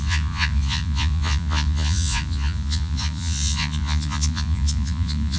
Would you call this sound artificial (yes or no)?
yes